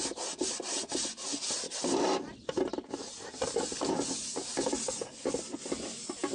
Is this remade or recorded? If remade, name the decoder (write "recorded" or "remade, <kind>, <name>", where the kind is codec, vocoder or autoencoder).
recorded